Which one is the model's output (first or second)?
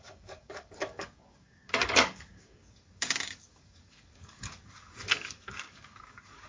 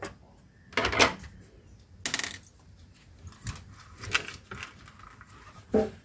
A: first